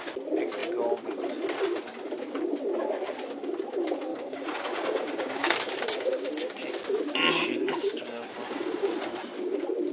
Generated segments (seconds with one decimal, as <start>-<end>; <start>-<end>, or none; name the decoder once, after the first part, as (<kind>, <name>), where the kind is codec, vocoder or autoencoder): 4.1-5.5 (codec, DAC); 7.5-8.9